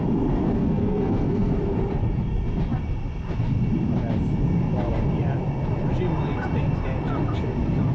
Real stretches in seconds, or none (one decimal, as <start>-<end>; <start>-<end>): 0.0-0.4; 1.5-7.9